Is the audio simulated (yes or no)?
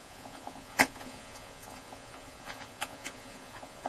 yes